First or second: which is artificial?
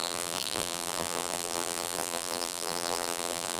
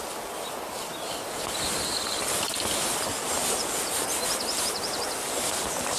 first